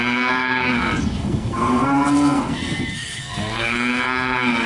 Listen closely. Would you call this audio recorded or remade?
remade